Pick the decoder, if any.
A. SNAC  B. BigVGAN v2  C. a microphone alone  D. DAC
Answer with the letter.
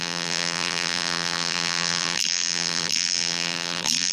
B